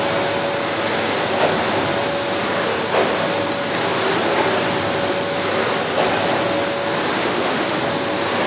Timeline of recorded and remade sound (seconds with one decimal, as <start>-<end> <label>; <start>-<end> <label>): 0.0-7.1 recorded; 7.1-7.8 remade; 7.8-8.5 recorded

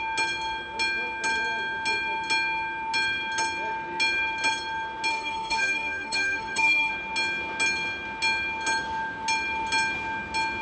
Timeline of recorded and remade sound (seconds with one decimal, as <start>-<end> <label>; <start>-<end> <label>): 0.0-5.1 recorded; 5.1-6.9 remade; 6.9-10.6 recorded

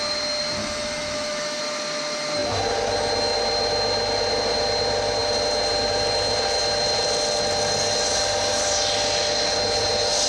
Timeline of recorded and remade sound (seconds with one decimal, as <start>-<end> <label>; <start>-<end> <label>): 0.0-0.6 recorded; 0.6-1.6 remade; 1.6-10.3 recorded

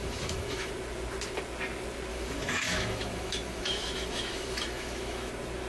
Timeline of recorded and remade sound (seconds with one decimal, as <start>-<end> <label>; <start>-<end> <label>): 0.0-0.7 remade; 0.7-2.1 recorded; 2.1-5.3 remade; 5.3-5.7 recorded

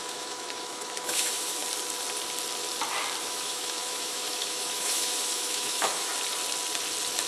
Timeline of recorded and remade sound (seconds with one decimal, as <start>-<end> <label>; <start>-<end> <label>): 0.0-1.6 remade; 1.6-3.2 recorded; 3.2-6.1 remade; 6.1-7.3 recorded